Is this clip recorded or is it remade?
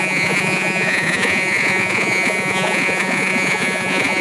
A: remade